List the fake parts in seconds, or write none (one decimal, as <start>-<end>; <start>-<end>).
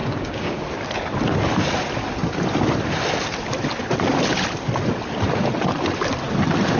0.0-0.6